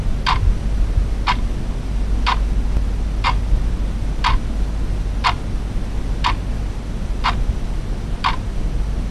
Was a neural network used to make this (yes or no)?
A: no